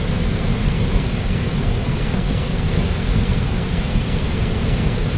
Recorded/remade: remade